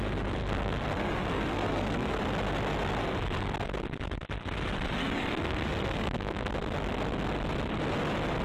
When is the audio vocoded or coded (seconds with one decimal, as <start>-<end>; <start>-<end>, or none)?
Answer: 0.4-2.2; 5.0-6.5